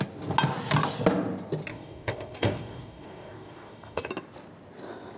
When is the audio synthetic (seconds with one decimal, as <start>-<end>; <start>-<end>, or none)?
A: 1.7-4.1